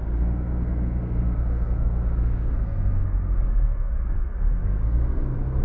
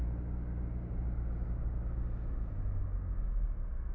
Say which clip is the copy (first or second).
first